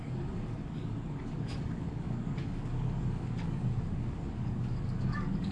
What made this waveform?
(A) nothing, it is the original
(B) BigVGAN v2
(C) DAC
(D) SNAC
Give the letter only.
C